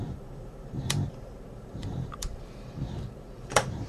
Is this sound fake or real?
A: fake